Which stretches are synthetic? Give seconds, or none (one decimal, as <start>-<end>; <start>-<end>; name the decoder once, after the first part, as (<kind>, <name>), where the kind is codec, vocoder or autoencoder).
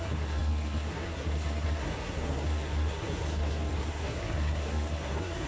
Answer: 0.0-5.5 (codec, SNAC)